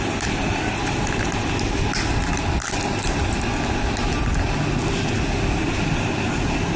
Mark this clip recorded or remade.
recorded